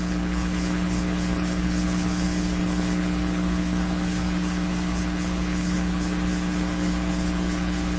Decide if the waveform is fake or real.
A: fake